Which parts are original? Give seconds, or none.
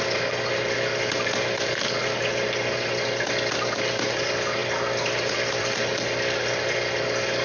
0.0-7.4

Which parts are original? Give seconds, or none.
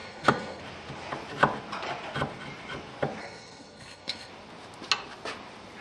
0.6-3.2; 4.3-5.8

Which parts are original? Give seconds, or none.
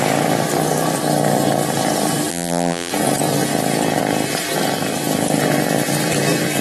0.0-2.3; 2.9-6.6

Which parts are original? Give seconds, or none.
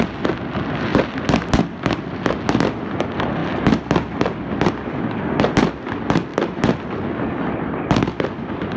0.0-6.3; 6.9-8.8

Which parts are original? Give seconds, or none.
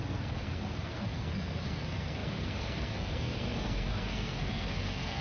none